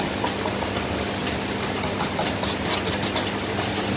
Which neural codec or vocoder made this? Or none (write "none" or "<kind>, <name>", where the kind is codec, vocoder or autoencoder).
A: none